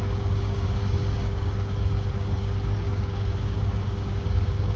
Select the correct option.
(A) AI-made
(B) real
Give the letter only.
A